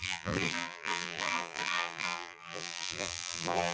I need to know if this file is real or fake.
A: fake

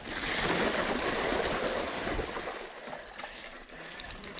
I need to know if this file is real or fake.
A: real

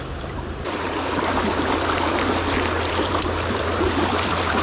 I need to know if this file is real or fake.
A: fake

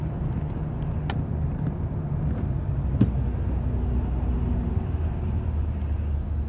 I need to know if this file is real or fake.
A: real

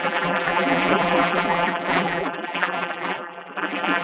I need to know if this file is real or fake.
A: fake